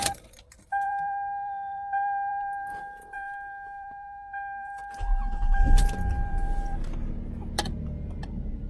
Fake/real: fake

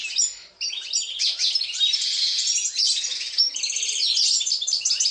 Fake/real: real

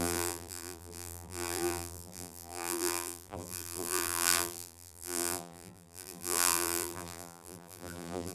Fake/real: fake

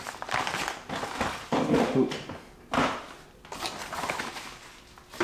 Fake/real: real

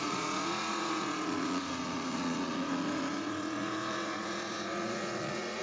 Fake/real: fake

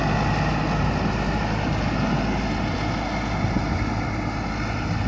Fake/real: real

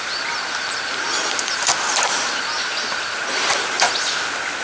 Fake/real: real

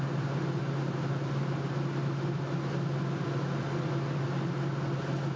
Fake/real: real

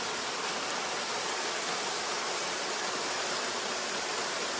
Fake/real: real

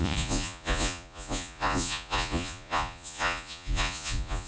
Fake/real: fake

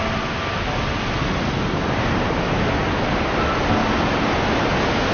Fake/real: real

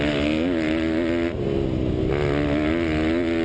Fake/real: real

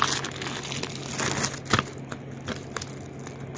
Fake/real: real